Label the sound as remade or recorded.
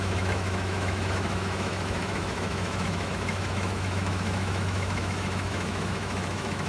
remade